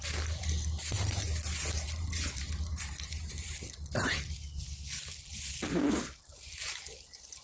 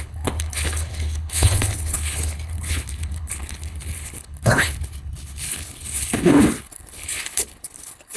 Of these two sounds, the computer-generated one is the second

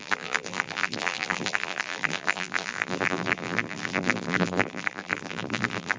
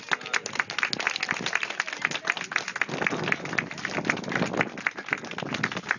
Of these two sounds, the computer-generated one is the first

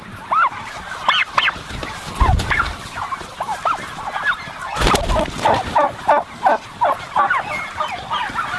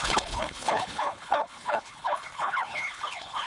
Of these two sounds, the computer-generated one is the second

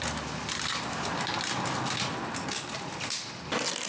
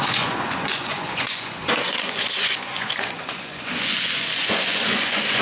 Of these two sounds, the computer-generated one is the second